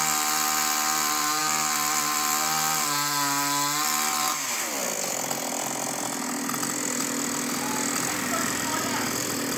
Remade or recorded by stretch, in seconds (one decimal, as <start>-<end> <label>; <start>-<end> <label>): 0.0-9.6 recorded